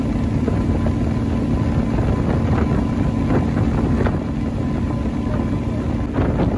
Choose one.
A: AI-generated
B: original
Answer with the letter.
B